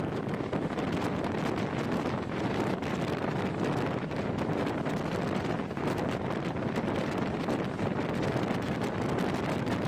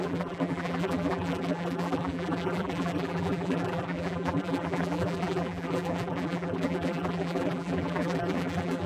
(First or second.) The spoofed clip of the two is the second